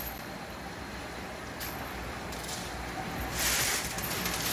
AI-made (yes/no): yes